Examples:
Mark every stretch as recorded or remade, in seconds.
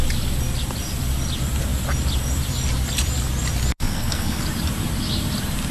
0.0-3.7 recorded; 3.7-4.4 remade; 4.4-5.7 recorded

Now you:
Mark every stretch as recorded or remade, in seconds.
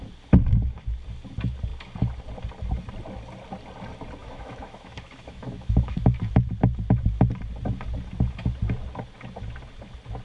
0.0-4.2 recorded; 4.2-6.0 remade; 6.0-10.2 recorded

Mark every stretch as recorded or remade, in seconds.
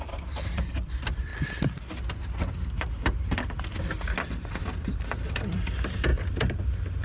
0.0-1.3 remade; 1.3-3.8 recorded; 3.8-6.1 remade; 6.1-6.6 recorded; 6.6-7.0 remade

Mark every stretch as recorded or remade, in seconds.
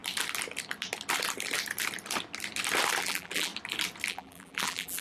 0.0-3.0 recorded; 3.0-3.5 remade; 3.5-4.1 recorded; 4.1-5.0 remade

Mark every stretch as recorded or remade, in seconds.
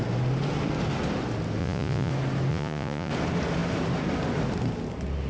0.0-1.6 recorded; 1.6-2.1 remade; 2.1-2.5 recorded; 2.5-3.1 remade; 3.1-5.3 recorded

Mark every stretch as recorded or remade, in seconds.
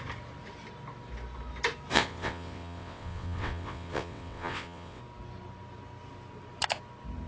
0.0-1.9 recorded; 1.9-5.0 remade; 5.0-7.3 recorded